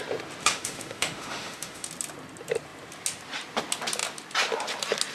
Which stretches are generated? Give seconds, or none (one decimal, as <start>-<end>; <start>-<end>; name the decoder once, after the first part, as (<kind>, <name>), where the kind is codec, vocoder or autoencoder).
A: 0.4-1.9 (autoencoder, DAC-VAE)